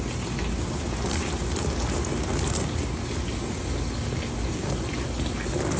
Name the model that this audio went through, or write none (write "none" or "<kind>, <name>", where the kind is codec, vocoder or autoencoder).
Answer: none